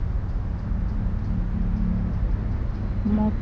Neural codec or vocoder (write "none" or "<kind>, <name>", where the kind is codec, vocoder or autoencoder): none